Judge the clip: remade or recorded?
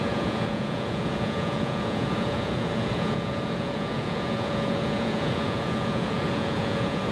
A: remade